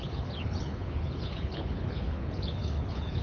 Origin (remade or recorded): remade